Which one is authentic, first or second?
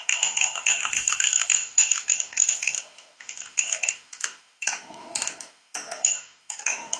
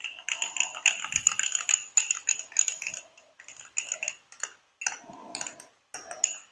second